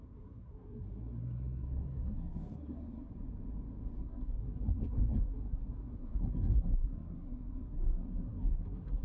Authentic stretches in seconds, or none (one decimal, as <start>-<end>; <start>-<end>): 3.1-4.0